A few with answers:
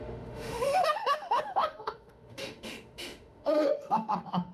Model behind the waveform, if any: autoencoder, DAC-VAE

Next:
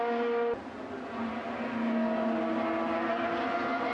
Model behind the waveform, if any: none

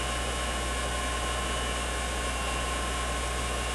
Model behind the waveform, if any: none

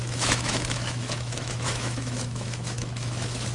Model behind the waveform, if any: autoencoder, DAC-VAE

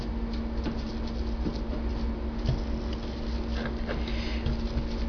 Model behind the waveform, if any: none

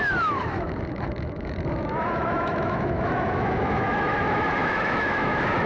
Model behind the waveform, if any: autoencoder, DAC-VAE